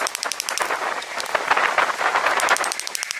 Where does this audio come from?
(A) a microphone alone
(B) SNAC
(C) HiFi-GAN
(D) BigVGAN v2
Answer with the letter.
A